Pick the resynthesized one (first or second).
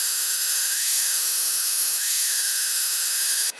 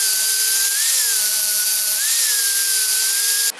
first